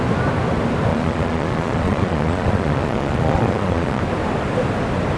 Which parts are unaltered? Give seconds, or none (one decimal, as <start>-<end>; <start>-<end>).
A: 0.0-0.9; 4.0-5.2